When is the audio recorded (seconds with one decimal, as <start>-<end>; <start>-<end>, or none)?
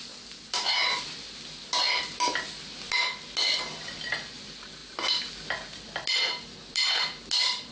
0.0-7.7